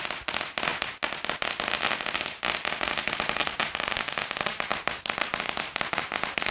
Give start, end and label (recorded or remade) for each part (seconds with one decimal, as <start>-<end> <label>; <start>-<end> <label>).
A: 0.0-6.5 recorded